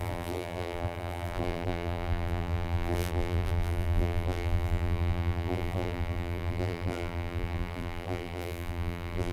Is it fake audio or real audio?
fake